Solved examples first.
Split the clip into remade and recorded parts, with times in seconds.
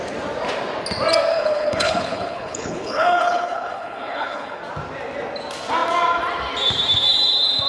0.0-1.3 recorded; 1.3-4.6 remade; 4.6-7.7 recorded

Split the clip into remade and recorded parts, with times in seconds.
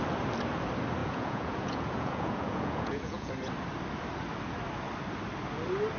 0.0-1.0 recorded; 1.0-3.3 remade; 3.3-6.0 recorded